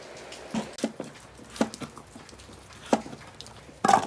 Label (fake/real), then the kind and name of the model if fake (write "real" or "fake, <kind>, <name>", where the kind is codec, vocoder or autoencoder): real